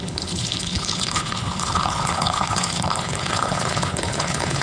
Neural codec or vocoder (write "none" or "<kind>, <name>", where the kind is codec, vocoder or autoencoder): codec, HILCodec